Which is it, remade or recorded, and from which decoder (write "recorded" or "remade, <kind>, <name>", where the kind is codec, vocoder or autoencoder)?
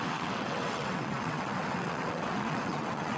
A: remade, vocoder, WaveNeXt